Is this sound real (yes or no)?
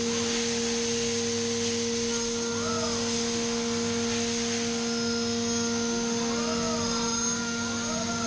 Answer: yes